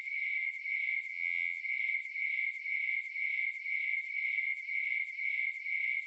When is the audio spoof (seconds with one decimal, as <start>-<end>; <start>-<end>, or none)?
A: 1.1-1.6